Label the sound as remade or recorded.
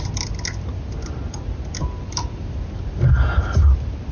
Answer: recorded